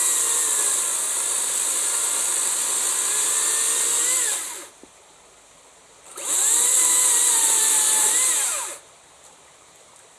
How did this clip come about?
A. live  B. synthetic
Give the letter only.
A